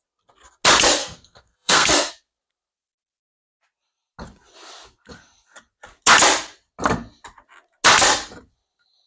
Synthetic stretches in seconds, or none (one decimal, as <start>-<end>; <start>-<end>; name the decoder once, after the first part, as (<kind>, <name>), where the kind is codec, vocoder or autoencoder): 1.0-2.1 (codec, SNAC)